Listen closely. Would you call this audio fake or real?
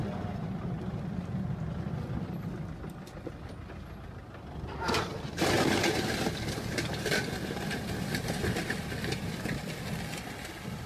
real